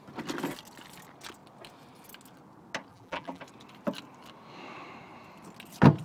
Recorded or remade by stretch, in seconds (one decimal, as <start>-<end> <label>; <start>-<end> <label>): 0.0-2.9 recorded; 2.9-3.4 remade; 3.4-6.0 recorded